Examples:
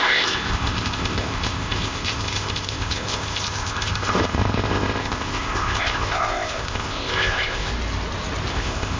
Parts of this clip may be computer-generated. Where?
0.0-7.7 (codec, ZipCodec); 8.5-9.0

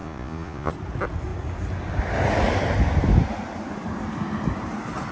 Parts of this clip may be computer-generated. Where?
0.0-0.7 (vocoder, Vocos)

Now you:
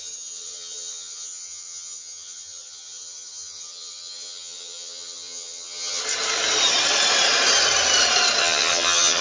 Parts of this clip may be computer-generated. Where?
0.0-6.0 (vocoder, HiFi-GAN); 8.4-9.2